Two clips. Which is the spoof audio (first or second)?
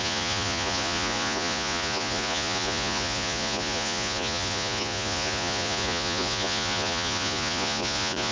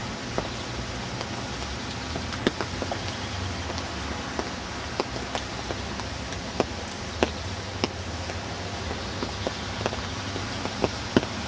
first